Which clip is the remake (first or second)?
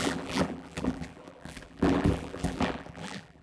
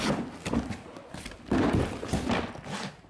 first